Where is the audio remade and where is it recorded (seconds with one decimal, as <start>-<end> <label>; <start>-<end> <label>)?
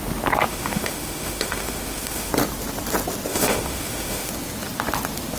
0.0-0.5 recorded; 0.5-2.3 remade; 2.3-3.3 recorded; 3.3-4.3 remade; 4.3-5.4 recorded